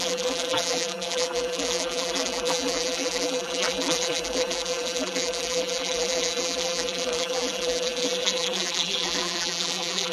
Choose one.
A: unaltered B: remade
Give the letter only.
B